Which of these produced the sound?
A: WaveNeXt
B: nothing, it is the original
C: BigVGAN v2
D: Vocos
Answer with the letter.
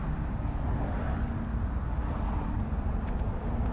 B